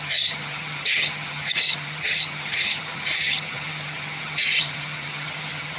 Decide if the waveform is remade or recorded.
remade